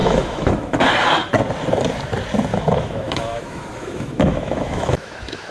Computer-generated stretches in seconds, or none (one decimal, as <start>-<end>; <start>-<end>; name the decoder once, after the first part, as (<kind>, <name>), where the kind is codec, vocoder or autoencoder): 0.0-0.8 (autoencoder, DAC-VAE); 2.5-5.5